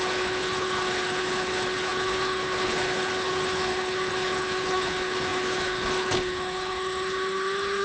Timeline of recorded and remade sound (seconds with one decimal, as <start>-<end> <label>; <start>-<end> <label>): 0.0-7.8 remade